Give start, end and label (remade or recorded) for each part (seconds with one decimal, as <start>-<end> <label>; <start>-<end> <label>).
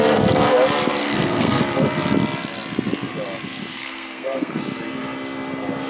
0.0-1.0 recorded; 1.0-1.6 remade; 1.6-3.7 recorded; 3.7-4.6 remade; 4.6-5.9 recorded